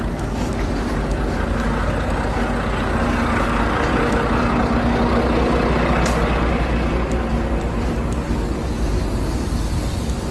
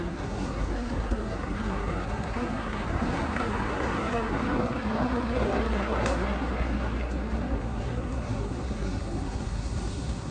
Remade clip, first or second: second